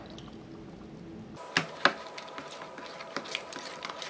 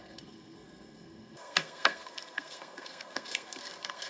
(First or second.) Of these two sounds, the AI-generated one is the second